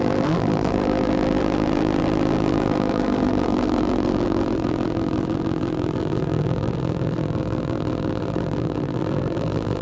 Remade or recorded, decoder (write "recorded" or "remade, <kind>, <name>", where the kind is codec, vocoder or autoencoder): remade, vocoder, BigVGAN v2